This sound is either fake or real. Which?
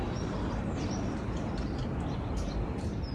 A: fake